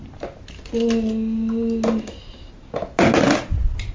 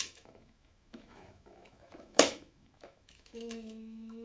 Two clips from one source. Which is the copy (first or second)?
second